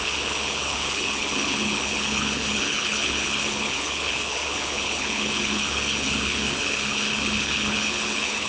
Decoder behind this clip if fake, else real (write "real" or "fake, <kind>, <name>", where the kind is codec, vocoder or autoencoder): fake, codec, HILCodec